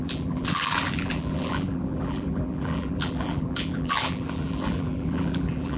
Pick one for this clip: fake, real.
fake